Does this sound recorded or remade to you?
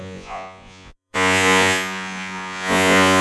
remade